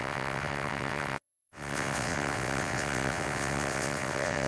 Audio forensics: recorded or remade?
remade